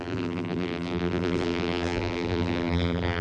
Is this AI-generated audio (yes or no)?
yes